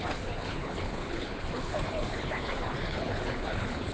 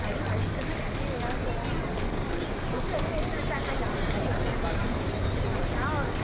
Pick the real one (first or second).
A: second